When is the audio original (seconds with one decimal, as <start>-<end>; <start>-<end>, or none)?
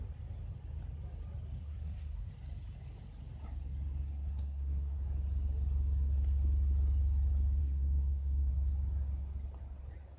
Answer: 0.0-1.6; 2.3-4.1; 5.0-7.6; 8.5-10.2